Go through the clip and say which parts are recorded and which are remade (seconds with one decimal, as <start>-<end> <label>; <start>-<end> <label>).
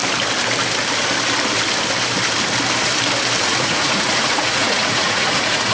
0.0-3.4 recorded; 3.4-5.7 remade